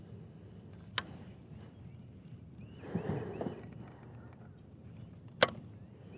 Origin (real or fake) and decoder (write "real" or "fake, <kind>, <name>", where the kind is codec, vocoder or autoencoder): real